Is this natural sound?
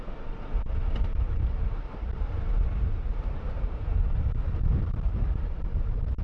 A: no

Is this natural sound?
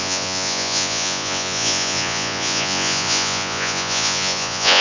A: no